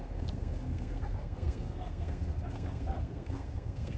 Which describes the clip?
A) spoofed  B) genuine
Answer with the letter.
A